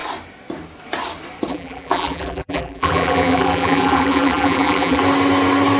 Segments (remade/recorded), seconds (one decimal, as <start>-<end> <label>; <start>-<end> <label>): 0.0-1.5 recorded; 1.5-5.0 remade; 5.0-5.8 recorded